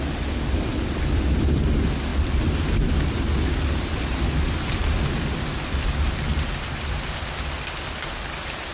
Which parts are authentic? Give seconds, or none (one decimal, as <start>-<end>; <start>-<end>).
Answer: 0.0-2.1; 4.0-8.7